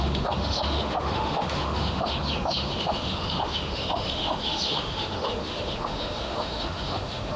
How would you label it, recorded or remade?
remade